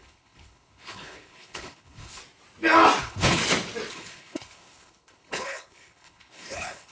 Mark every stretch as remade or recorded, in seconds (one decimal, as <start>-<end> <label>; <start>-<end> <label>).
0.0-2.2 remade; 2.2-3.0 recorded; 3.0-3.4 remade; 3.4-3.9 recorded; 3.9-6.9 remade